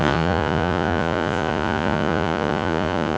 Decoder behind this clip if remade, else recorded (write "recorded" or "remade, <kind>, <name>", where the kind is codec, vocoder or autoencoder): remade, vocoder, Vocos